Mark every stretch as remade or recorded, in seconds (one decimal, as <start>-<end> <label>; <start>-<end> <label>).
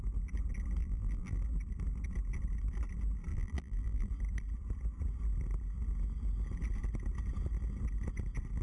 0.0-0.8 recorded; 0.8-1.4 remade; 1.4-3.3 recorded; 3.3-4.1 remade; 4.1-8.6 recorded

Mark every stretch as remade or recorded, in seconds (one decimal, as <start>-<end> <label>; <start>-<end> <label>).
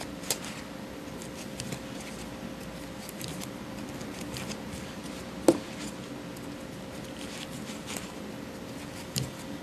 0.0-5.0 remade; 5.0-7.4 recorded; 7.4-9.6 remade